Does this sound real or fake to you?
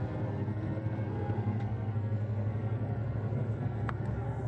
fake